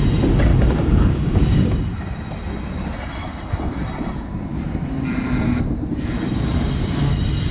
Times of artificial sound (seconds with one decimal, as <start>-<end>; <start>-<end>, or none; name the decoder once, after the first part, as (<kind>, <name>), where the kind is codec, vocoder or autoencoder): 0.5-1.7 (codec, DAC)